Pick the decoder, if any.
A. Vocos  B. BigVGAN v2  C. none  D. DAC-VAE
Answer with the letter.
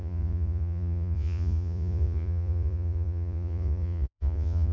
A